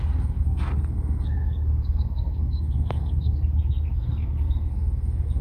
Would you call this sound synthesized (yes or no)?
yes